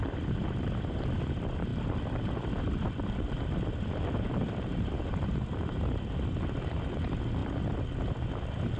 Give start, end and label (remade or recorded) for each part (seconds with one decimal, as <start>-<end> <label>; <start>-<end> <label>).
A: 0.0-1.7 remade; 1.7-2.4 recorded; 2.4-4.7 remade; 4.7-5.9 recorded; 5.9-8.8 remade